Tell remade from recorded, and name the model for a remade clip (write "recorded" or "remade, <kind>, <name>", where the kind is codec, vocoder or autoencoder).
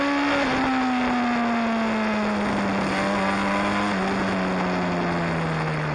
recorded